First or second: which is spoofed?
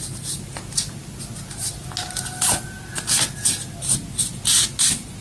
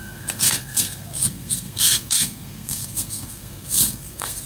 second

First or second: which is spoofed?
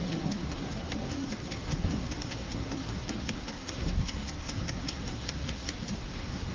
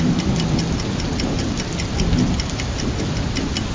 first